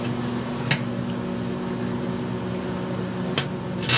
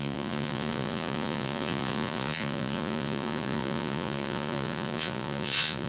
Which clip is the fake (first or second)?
second